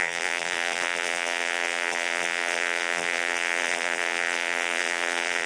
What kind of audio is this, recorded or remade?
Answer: remade